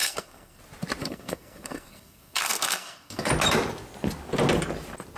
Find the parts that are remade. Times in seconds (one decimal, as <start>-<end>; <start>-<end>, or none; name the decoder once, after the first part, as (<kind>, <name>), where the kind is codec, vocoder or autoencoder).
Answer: 0.0-0.6 (codec, SNAC); 1.0-3.3